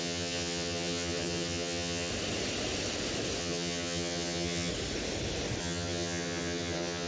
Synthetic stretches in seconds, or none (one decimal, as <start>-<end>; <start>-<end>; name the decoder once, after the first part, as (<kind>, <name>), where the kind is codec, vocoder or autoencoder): 0.0-2.1 (vocoder, HiFi-GAN); 3.4-4.7; 5.6-7.1